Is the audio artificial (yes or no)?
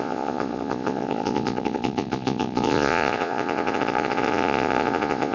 yes